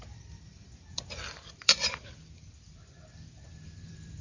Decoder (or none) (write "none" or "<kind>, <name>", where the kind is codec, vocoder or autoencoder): vocoder, BigVGAN v2